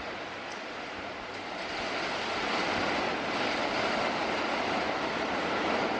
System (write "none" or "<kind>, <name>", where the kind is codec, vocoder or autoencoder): none